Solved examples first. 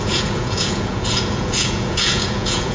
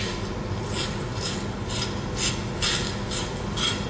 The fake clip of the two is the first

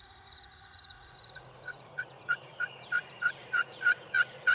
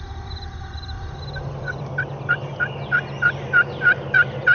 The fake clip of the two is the first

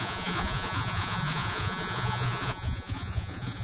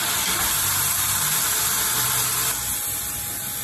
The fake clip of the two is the first